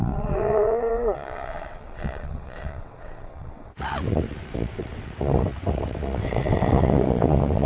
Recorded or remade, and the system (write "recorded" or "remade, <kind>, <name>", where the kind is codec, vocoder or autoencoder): remade, vocoder, WaveNeXt